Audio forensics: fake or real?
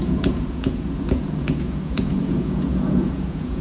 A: fake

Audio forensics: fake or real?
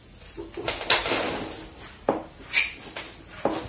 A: real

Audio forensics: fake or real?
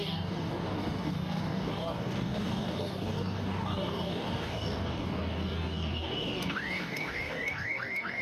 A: fake